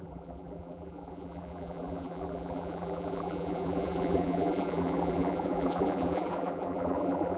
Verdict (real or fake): fake